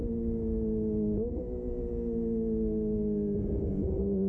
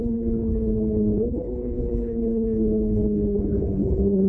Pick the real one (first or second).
first